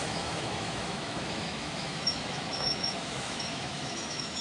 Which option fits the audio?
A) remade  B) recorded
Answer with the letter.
A